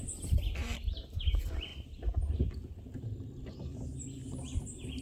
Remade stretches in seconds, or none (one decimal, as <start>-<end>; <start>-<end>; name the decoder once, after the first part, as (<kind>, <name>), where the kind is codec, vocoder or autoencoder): none